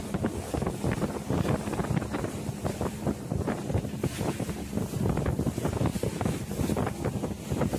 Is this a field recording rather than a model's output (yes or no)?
no